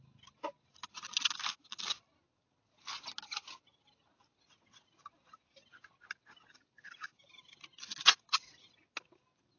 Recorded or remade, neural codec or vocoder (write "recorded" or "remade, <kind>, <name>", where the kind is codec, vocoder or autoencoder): recorded